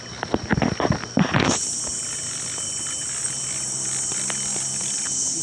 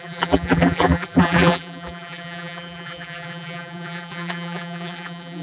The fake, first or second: second